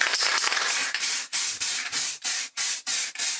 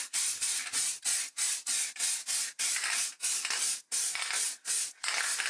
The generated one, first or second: first